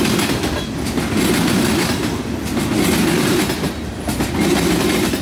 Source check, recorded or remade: recorded